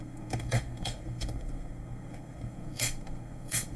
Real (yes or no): no